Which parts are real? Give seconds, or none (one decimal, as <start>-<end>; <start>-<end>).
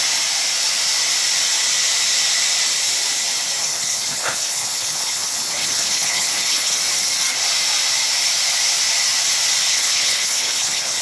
0.0-3.6; 6.8-9.7